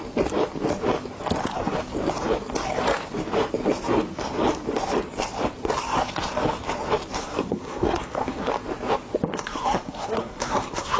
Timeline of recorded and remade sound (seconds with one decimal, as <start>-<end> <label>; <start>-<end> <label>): 0.0-7.2 recorded; 7.2-8.5 remade; 8.5-9.3 recorded; 9.3-11.0 remade